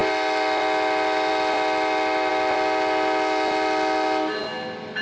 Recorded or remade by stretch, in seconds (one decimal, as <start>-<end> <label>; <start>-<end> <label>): 0.0-5.0 recorded